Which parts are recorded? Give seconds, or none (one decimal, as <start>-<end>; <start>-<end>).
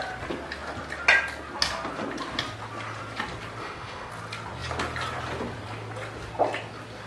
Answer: 0.0-3.6; 4.1-7.1